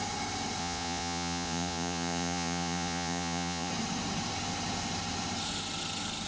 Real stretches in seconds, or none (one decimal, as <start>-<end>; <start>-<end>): 0.0-0.6; 3.7-6.3